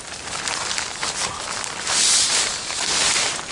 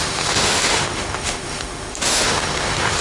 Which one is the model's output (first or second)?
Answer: second